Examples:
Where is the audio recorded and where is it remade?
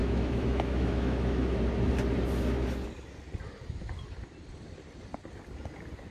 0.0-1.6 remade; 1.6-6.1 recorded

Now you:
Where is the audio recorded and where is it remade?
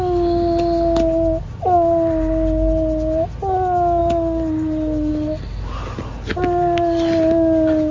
0.0-7.9 recorded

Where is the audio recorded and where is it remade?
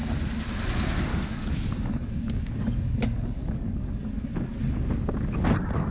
0.0-1.1 recorded; 1.1-4.6 remade; 4.6-5.9 recorded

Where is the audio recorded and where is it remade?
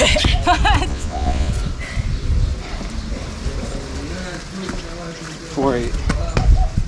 0.0-0.9 recorded; 0.9-1.5 remade; 1.5-6.9 recorded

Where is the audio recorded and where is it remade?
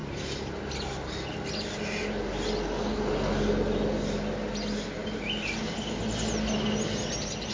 0.0-7.5 recorded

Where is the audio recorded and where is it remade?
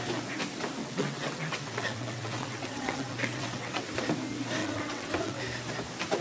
0.0-0.8 recorded; 0.8-3.8 remade; 3.8-4.6 recorded; 4.6-5.4 remade; 5.4-6.2 recorded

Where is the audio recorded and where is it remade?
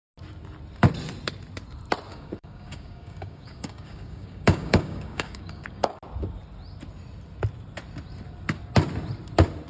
0.0-2.1 recorded; 2.1-6.0 remade; 6.0-9.7 recorded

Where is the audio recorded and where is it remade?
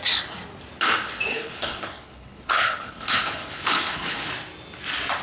0.0-1.3 recorded; 1.3-4.3 remade; 4.3-5.2 recorded